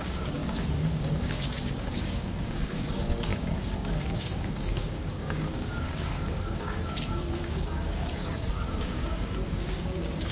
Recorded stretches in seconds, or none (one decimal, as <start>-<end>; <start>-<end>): none